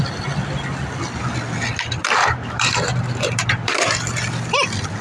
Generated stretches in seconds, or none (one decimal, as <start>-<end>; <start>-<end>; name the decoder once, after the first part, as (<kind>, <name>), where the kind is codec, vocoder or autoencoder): 2.0-3.9 (vocoder, BigVGAN v2)